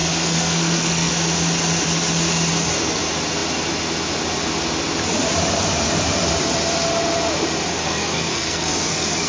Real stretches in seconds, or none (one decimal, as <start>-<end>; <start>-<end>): 1.1-7.7